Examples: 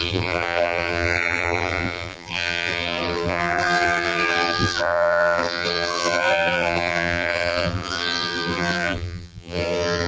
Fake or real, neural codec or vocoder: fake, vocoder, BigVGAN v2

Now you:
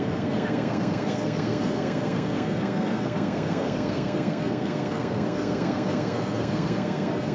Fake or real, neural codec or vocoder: fake, codec, SNAC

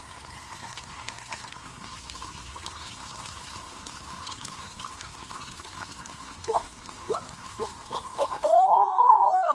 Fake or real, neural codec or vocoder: fake, codec, SNAC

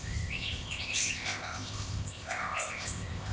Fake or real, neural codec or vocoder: fake, codec, ZipCodec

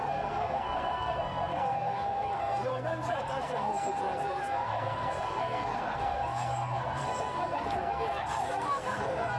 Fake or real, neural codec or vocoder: fake, codec, SNAC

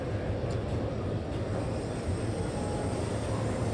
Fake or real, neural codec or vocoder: real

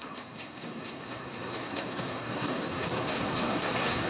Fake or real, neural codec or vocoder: fake, codec, SNAC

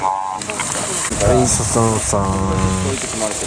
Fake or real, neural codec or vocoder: real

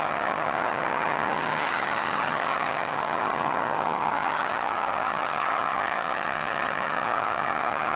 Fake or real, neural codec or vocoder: fake, vocoder, HiFi-GAN